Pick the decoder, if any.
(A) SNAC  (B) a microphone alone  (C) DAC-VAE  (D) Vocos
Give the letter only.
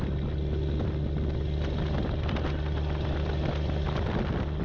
B